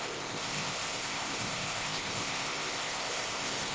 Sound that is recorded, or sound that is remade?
remade